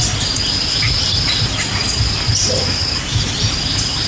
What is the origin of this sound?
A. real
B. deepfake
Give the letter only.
A